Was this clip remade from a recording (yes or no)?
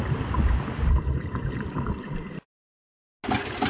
no